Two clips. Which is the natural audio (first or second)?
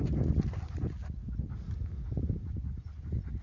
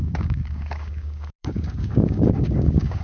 first